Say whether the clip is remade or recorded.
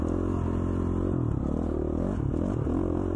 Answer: recorded